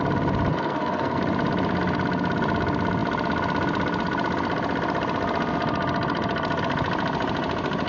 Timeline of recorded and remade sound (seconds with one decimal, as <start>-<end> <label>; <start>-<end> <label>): 0.0-0.5 recorded; 0.5-1.2 remade; 1.2-7.9 recorded